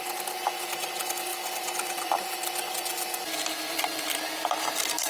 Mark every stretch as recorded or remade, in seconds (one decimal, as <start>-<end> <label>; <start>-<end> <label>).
0.0-1.3 recorded; 1.3-4.0 remade; 4.0-5.1 recorded